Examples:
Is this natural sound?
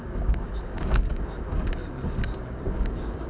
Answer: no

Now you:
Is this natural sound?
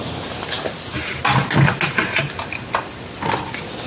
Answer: yes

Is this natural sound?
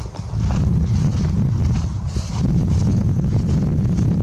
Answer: yes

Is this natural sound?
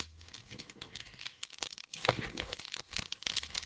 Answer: no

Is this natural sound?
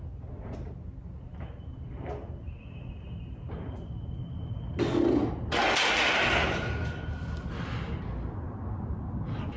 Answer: yes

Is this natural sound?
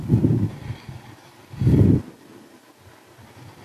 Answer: yes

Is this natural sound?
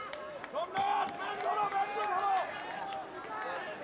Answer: yes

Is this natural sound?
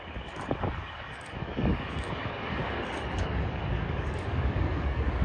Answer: no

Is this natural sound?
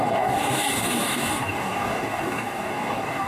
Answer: no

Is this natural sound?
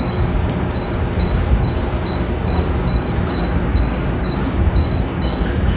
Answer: no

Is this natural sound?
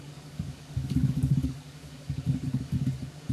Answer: no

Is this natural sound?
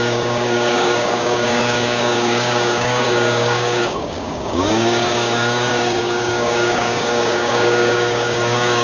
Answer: no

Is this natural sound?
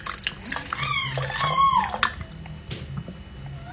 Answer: yes